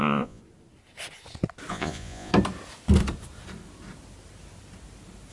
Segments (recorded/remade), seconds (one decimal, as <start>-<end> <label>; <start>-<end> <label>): 0.0-0.4 remade; 0.4-1.7 recorded; 1.7-2.3 remade; 2.3-5.3 recorded